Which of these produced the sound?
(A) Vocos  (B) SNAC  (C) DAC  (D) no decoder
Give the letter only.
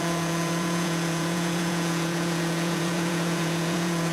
A